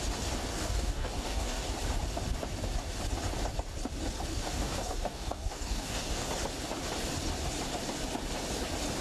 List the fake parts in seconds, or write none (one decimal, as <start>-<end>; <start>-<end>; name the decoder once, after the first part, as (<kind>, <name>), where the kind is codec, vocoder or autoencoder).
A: 0.5-1.7 (codec, DAC); 4.3-6.3